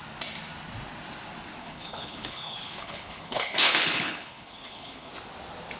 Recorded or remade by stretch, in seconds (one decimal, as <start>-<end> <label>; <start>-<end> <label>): 0.0-1.6 recorded; 1.6-5.1 remade; 5.1-5.8 recorded